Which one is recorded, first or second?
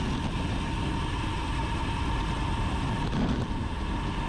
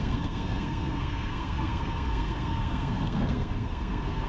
first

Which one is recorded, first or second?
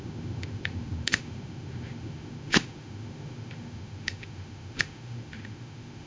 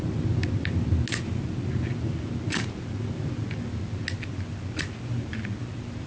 second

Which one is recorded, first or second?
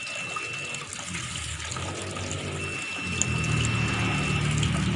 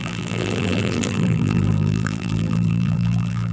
first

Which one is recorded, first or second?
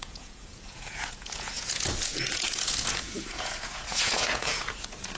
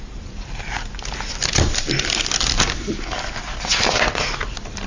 second